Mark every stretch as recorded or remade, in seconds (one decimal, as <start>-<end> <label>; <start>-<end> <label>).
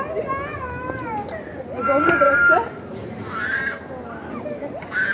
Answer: 0.0-0.5 recorded; 0.5-1.1 remade; 1.1-5.1 recorded